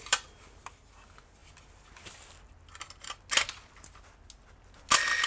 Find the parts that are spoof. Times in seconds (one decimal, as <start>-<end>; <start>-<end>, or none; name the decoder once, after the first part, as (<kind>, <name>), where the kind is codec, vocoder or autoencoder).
none

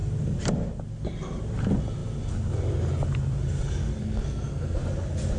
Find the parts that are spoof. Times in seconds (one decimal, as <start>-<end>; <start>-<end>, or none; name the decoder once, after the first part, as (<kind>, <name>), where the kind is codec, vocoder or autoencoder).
4.0-4.8 (codec, SNAC)